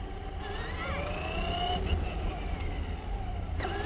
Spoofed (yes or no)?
no